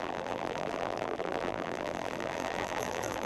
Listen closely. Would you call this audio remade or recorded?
remade